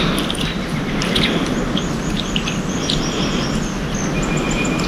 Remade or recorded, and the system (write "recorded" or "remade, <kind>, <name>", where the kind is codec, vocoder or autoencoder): recorded